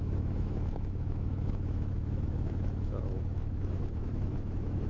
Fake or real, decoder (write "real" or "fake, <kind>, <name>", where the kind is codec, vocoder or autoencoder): fake, autoencoder, DAC-VAE